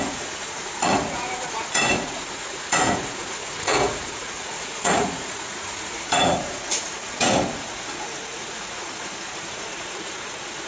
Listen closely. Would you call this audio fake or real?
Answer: fake